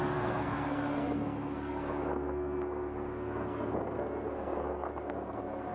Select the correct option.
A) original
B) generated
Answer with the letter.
B